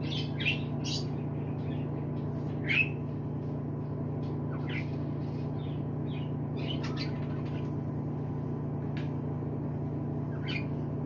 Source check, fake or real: real